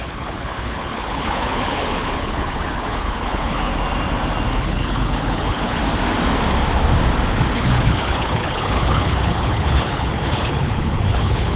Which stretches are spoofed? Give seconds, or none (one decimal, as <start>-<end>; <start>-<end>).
0.0-3.7; 4.5-5.8; 7.5-11.6